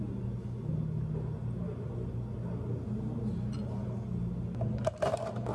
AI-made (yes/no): no